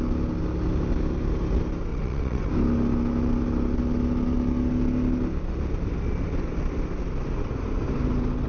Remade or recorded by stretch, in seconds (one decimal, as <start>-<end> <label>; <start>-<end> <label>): 0.0-1.9 recorded; 1.9-2.5 remade; 2.5-8.5 recorded